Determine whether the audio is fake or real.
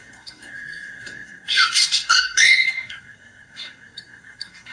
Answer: fake